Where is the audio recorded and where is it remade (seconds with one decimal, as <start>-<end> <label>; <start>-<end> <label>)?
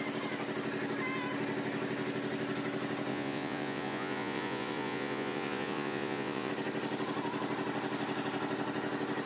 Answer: 0.0-3.1 recorded; 3.1-6.5 remade; 6.5-9.3 recorded